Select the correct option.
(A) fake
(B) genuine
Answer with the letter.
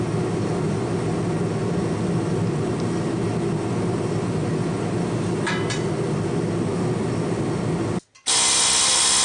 B